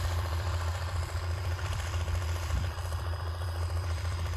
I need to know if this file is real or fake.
fake